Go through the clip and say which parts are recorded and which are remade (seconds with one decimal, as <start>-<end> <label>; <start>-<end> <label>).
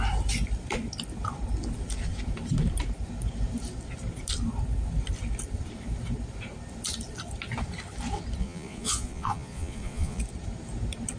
0.0-8.4 recorded; 8.4-10.2 remade; 10.2-11.2 recorded